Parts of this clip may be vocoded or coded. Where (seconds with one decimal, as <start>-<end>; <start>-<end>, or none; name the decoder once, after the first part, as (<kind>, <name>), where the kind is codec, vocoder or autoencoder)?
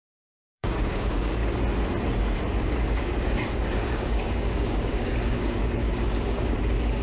0.0-1.4 (codec, DAC); 2.2-7.0